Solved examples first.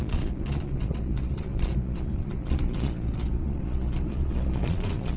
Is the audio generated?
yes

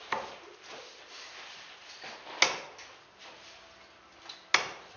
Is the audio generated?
no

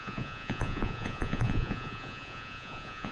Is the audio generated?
yes